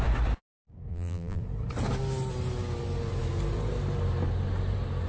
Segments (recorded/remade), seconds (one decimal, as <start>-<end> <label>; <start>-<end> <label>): 0.0-0.9 recorded; 0.9-1.4 remade; 1.4-5.1 recorded